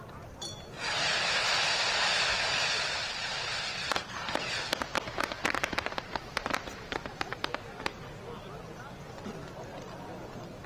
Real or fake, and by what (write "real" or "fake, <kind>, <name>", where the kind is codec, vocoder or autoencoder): real